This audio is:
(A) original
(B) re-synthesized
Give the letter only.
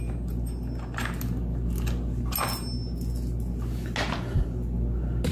A